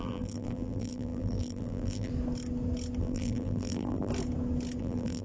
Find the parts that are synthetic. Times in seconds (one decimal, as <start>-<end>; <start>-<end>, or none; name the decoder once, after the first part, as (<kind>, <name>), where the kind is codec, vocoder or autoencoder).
0.0-2.1 (vocoder, BigVGAN v2); 3.0-4.1; 4.8-5.2